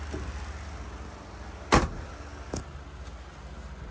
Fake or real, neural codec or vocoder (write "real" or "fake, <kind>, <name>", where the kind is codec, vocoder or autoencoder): real